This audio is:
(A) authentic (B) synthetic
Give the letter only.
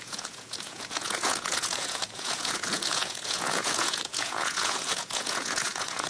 B